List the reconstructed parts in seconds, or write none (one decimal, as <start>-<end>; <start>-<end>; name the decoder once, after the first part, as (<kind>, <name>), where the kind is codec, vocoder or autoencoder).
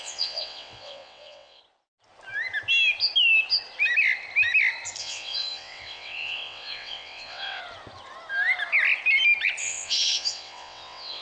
0.0-1.6 (vocoder, WaveNeXt); 5.0-7.6; 9.6-11.2